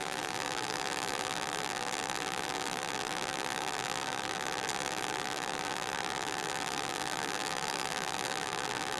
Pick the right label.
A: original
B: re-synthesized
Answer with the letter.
B